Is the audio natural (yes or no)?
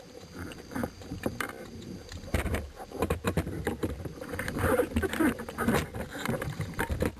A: no